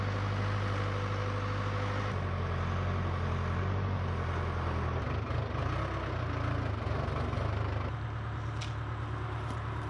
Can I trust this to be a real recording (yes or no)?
yes